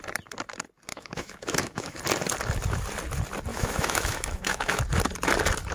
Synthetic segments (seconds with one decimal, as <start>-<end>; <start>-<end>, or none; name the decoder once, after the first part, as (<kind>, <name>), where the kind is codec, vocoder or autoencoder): 0.9-2.0 (autoencoder, DAC-VAE); 3.5-4.8